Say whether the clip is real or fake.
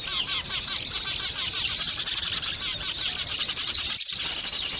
real